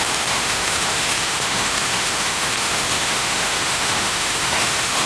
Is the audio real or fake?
fake